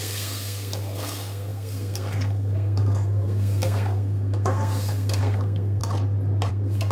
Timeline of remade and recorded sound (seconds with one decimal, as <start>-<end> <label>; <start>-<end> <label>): 0.0-5.8 remade; 5.8-6.5 recorded; 6.5-6.9 remade